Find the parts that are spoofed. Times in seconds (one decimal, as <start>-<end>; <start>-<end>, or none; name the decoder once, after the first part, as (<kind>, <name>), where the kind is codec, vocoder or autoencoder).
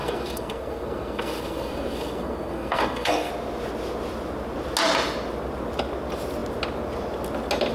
0.0-3.3 (codec, SNAC)